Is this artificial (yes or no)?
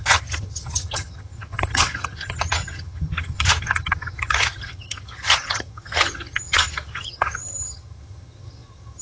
yes